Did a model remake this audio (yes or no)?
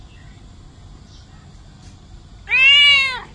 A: no